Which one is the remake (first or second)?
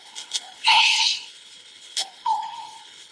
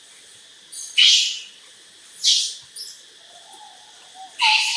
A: first